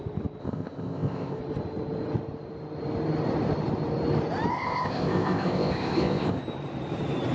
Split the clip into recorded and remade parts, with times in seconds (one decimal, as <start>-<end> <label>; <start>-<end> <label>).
0.0-0.4 recorded; 0.4-1.4 remade; 1.4-4.5 recorded; 4.5-6.4 remade; 6.4-7.3 recorded